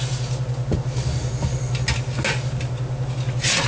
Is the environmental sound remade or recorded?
recorded